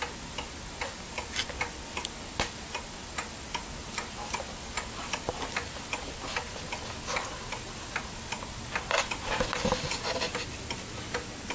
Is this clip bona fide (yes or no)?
yes